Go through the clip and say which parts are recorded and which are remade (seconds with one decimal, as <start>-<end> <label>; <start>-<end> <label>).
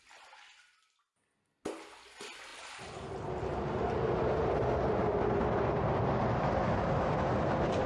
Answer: 0.0-7.9 recorded